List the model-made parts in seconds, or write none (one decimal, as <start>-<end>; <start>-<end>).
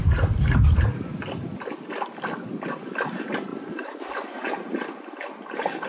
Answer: 3.5-4.9